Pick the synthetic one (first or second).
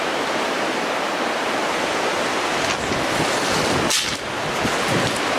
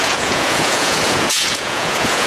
second